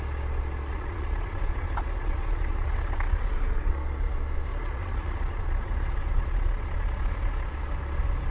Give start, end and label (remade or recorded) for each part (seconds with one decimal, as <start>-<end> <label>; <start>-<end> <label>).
0.0-0.7 recorded; 0.7-3.7 remade; 3.7-4.5 recorded; 4.5-7.5 remade; 7.5-8.3 recorded